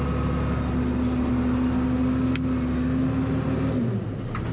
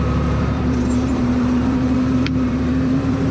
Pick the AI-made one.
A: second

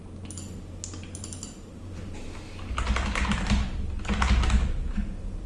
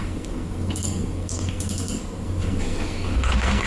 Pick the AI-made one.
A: second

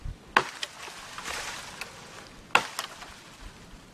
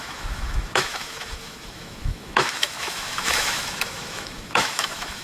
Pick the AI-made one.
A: second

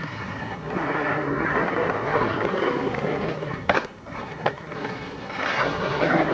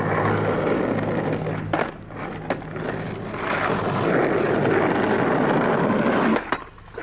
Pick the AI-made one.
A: first